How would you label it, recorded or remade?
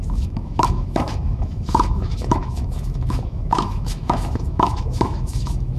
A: remade